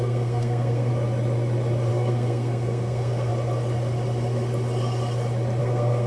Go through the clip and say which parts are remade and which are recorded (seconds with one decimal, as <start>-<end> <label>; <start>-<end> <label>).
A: 0.0-0.9 remade; 0.9-1.9 recorded; 1.9-3.3 remade; 3.3-5.6 recorded; 5.6-6.1 remade